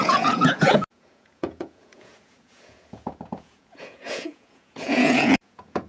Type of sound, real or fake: fake